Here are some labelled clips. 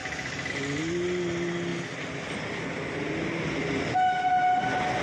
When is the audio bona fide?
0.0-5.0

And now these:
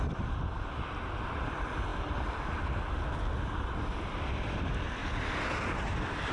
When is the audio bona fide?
1.9-3.4; 5.0-6.3

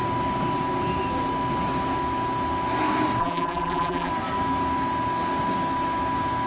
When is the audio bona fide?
0.0-3.2; 4.1-6.5

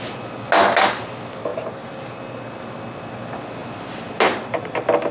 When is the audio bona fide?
0.0-1.5; 2.6-5.1

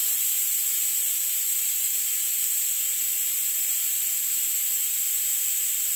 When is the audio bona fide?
3.6-6.0

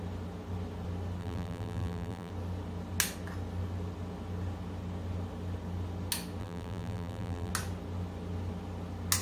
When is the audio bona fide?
0.0-1.2; 2.3-6.4; 7.5-9.2

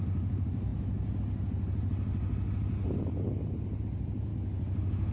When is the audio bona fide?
0.7-3.8; 4.3-5.1